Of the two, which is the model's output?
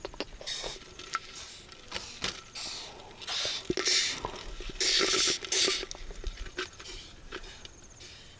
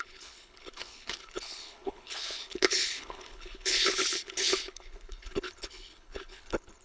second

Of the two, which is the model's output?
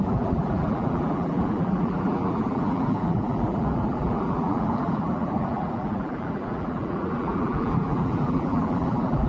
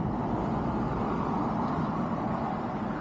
first